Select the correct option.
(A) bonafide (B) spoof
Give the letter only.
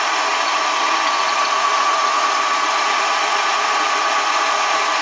B